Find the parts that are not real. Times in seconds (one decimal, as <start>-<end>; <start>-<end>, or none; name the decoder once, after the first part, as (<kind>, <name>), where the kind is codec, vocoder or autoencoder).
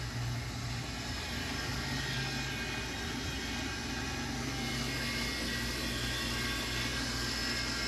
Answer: none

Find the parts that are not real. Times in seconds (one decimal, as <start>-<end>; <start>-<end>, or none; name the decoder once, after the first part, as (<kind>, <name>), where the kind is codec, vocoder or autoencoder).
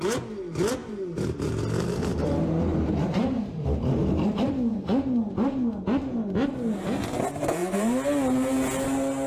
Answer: 0.8-1.5 (vocoder, BigVGAN v2); 2.1-4.5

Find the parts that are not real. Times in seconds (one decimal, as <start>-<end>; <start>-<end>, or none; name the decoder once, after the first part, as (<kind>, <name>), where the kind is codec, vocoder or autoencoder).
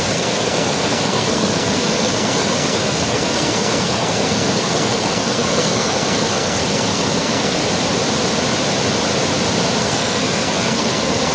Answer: 0.0-7.6 (codec, SNAC); 9.8-11.3